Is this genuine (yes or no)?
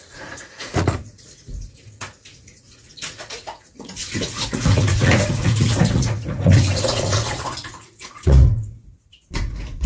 no